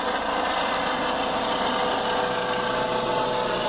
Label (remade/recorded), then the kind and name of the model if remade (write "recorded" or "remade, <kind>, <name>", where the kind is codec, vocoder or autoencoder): recorded